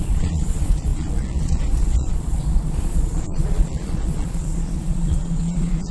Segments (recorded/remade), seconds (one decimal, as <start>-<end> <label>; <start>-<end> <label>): 0.0-5.9 remade